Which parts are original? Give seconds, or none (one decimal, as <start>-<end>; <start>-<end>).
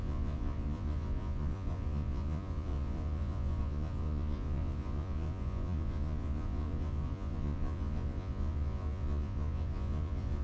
none